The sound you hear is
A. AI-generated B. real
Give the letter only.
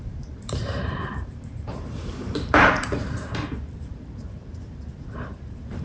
A